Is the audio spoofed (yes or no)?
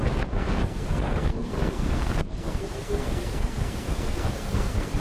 yes